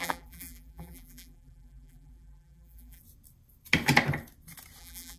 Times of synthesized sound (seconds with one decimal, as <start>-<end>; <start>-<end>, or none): 0.0-3.0; 4.8-5.2